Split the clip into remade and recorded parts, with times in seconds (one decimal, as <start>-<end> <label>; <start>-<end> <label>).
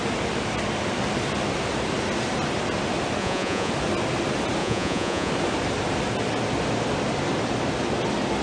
0.0-3.2 recorded; 3.2-3.7 remade; 3.7-4.6 recorded; 4.6-5.3 remade; 5.3-8.4 recorded